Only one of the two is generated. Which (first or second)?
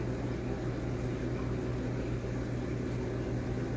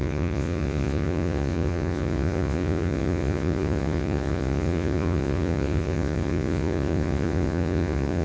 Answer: second